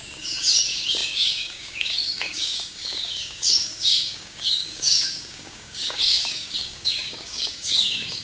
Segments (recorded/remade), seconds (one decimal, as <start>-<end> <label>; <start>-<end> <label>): 0.0-8.2 remade